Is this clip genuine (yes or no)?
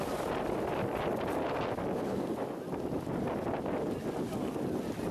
yes